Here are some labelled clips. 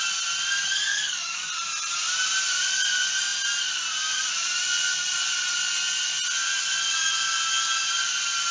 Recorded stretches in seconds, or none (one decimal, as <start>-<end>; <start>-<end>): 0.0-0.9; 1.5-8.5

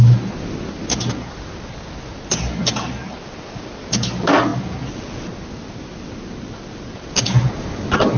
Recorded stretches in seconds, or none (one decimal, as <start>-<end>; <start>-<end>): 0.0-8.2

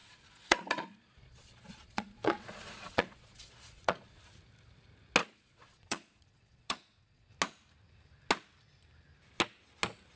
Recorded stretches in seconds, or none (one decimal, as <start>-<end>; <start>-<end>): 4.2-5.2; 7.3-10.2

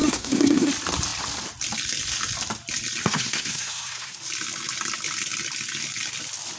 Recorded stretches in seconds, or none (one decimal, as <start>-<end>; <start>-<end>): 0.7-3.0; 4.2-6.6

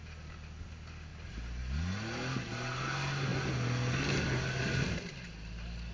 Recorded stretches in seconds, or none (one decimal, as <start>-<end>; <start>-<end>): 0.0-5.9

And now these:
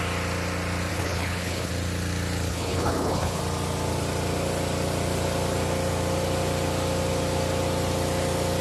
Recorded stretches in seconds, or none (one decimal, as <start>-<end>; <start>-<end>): 0.0-0.9; 1.7-2.5; 3.4-8.6